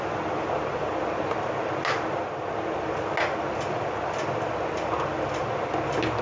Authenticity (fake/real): real